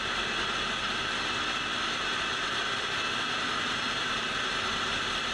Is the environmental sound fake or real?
real